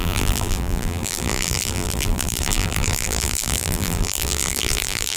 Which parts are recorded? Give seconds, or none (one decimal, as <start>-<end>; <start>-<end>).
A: none